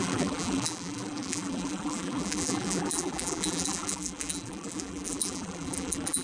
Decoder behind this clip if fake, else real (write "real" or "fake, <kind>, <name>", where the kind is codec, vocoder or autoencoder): fake, vocoder, BigVGAN v2